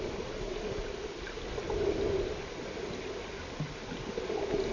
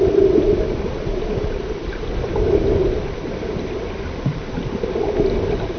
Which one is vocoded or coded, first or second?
second